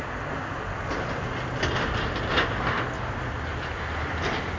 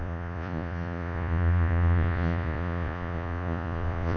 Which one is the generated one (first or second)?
second